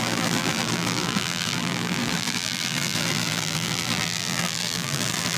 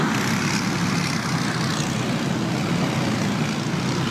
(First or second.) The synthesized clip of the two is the first